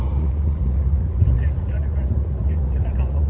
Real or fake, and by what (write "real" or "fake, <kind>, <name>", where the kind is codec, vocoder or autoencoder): fake, vocoder, Vocos